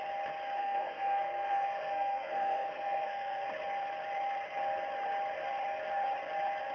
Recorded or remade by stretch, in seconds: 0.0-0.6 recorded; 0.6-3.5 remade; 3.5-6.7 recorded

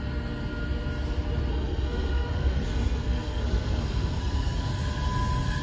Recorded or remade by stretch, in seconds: 0.0-1.5 recorded; 1.5-4.7 remade; 4.7-5.6 recorded

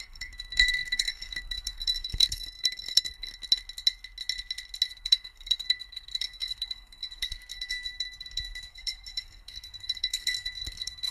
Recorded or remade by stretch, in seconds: 0.0-3.3 remade; 3.3-4.9 recorded; 4.9-11.1 remade